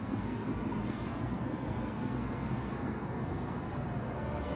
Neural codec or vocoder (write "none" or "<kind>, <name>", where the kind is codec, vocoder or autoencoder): codec, SNAC